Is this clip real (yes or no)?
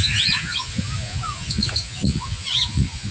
no